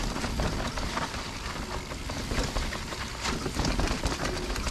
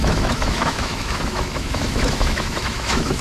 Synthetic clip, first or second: second